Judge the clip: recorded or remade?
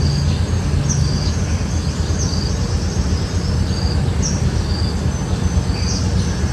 recorded